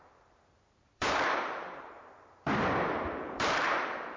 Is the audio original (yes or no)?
no